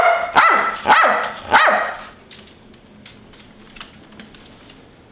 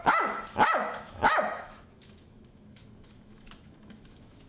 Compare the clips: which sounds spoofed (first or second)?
second